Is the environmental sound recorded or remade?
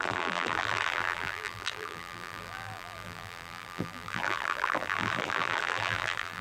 remade